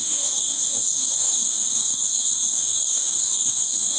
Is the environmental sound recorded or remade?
remade